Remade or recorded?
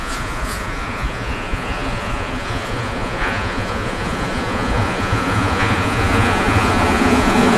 remade